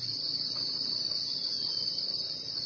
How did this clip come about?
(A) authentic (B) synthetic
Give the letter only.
B